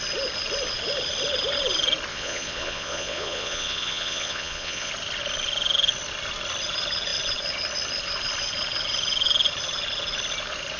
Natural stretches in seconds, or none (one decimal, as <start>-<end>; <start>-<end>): 0.0-2.1; 4.9-10.8